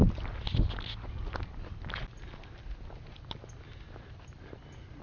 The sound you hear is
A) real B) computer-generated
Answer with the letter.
A